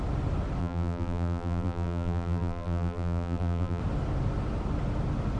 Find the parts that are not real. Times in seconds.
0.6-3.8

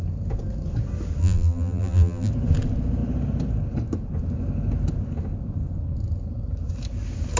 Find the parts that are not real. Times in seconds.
1.2-2.3

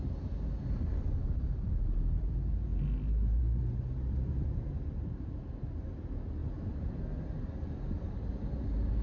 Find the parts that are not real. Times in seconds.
6.4-6.9

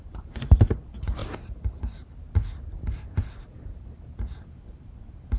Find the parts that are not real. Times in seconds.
0.0-1.2; 4.4-5.4